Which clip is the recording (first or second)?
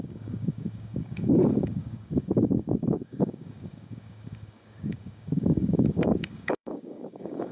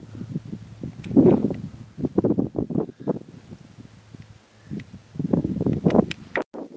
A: second